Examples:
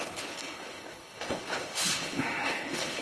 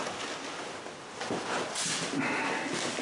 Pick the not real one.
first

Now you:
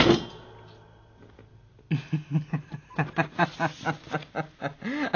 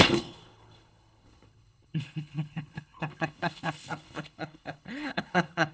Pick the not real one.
second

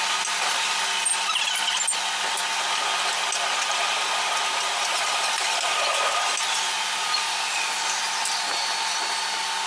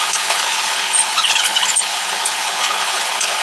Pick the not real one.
second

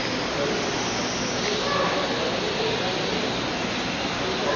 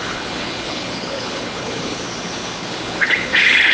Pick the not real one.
second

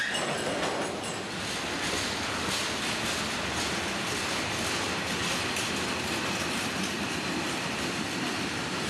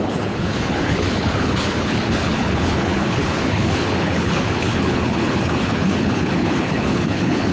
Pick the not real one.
second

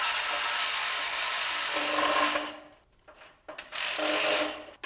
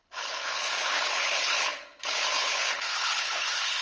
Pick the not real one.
second